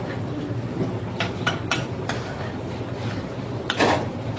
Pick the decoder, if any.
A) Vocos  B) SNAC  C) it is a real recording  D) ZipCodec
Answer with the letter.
C